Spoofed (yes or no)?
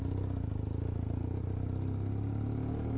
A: no